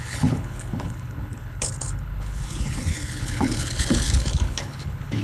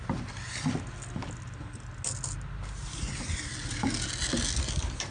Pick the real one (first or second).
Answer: second